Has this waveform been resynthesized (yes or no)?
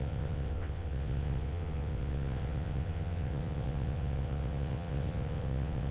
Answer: yes